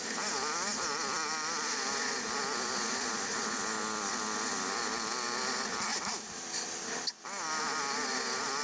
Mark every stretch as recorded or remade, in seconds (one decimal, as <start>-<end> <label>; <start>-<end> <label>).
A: 0.0-8.6 recorded